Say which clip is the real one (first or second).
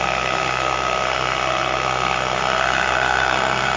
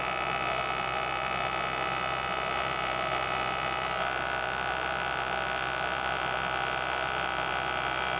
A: second